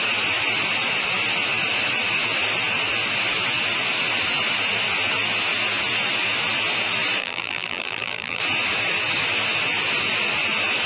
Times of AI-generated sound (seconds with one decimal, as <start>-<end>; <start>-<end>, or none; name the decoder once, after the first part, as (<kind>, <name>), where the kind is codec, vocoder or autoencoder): 7.2-8.4 (vocoder, BigVGAN v2)